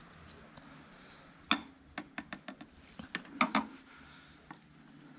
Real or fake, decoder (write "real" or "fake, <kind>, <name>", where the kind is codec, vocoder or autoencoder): real